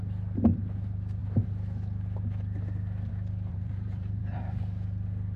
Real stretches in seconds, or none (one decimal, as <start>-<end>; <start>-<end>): 0.0-3.5; 4.2-5.4